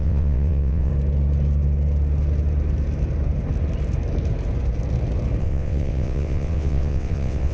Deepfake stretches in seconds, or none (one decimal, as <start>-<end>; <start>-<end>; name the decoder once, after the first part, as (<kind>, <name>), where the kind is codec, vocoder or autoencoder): 0.0-0.9 (vocoder, WaveNeXt); 5.4-7.5